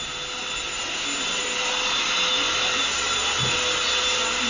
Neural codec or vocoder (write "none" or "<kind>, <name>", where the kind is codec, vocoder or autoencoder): none